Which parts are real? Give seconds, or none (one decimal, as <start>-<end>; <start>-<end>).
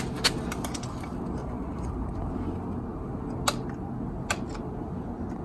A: 0.0-1.4; 1.9-5.4